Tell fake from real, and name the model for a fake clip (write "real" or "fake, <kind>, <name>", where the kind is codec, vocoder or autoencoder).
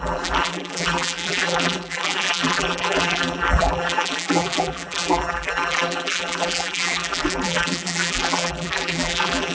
fake, vocoder, BigVGAN v2